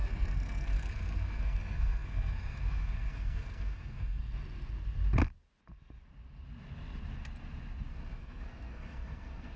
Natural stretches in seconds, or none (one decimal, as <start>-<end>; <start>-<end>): 4.2-7.9